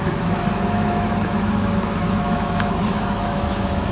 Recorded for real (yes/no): no